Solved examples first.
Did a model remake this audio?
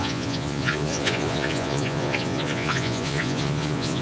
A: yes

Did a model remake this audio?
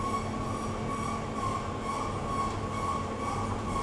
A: no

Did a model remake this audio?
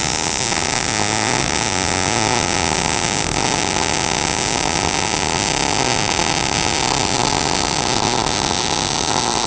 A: no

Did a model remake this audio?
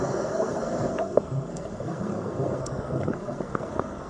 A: yes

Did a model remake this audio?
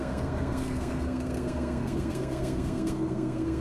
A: yes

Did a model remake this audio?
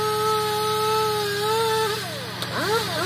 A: no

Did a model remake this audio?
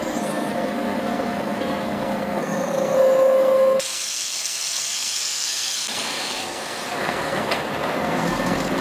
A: yes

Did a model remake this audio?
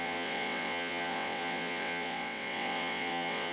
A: yes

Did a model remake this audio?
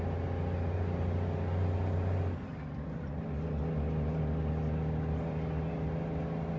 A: no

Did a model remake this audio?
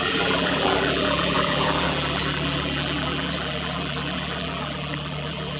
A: yes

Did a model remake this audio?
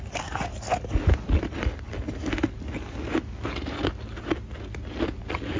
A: no